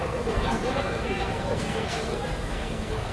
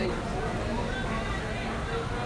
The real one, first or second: second